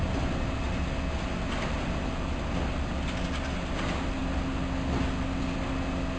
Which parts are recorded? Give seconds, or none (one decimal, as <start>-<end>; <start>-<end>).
0.0-6.2